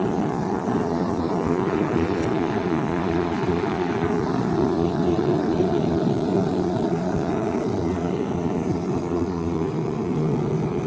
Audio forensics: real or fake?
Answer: fake